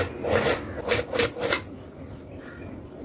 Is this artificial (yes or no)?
no